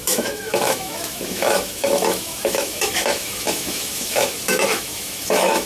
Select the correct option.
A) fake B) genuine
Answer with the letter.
A